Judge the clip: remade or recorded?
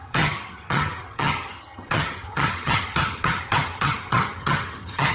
remade